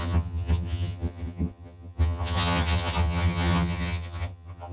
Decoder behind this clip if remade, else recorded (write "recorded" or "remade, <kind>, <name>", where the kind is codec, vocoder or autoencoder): remade, vocoder, HiFi-GAN